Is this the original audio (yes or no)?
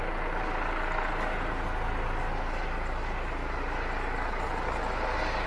yes